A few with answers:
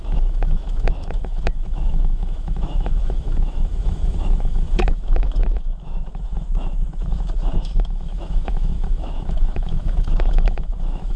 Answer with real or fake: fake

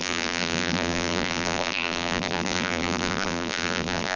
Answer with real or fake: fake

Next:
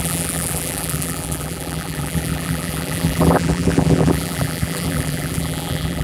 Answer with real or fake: fake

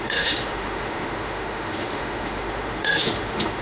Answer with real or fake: fake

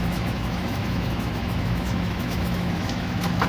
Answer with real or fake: fake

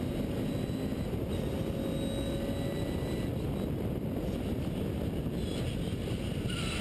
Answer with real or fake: real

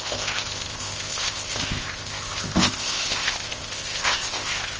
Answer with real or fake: fake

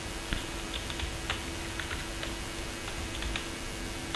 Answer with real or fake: real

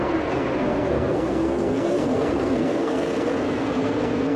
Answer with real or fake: fake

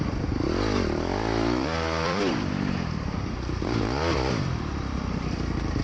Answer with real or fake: fake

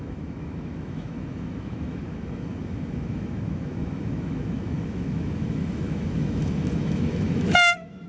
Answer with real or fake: fake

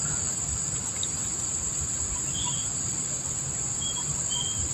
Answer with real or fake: real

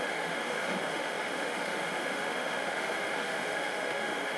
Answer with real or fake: fake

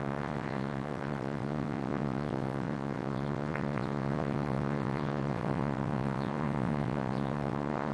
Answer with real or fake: fake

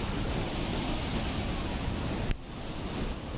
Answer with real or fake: real